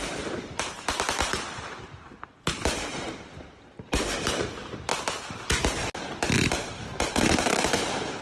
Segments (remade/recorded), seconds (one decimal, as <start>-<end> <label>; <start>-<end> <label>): 0.0-4.9 remade; 4.9-7.1 recorded; 7.1-8.2 remade